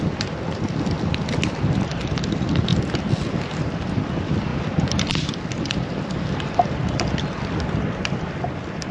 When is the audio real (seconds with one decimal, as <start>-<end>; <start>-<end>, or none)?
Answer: 0.0-8.9